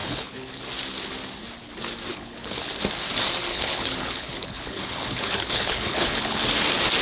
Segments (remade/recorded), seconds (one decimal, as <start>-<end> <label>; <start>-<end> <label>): 0.0-0.6 remade; 0.6-2.1 recorded; 2.1-2.7 remade; 2.7-3.5 recorded; 3.5-6.4 remade; 6.4-7.0 recorded